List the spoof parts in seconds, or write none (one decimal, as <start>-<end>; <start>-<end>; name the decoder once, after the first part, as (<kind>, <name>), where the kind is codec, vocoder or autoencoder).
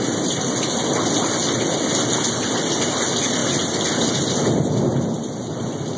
none